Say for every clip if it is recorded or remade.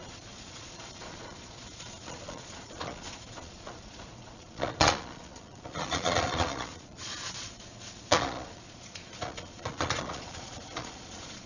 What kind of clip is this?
remade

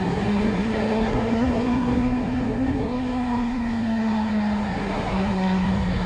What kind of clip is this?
remade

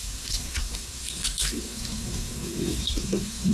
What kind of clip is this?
remade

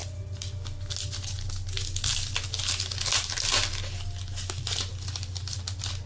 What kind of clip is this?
recorded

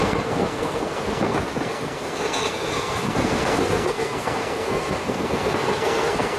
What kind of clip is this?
remade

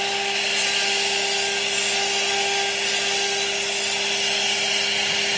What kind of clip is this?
recorded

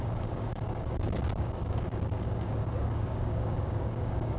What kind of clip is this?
remade